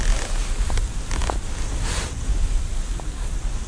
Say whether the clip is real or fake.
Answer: real